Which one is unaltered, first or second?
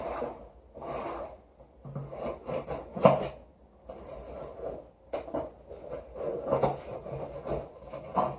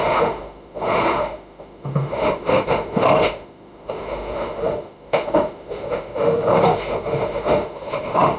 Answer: first